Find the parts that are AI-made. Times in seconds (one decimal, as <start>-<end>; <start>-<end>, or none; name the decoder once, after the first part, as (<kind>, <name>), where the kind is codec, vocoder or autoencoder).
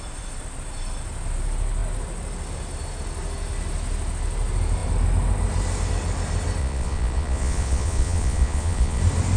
6.6-9.0 (vocoder, Vocos)